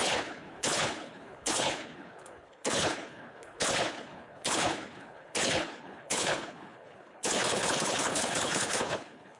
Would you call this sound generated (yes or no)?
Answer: yes